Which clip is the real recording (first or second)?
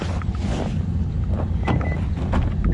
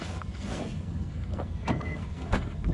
first